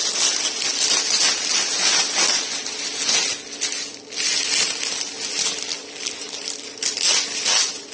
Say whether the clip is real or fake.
real